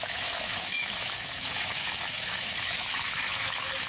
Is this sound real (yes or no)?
no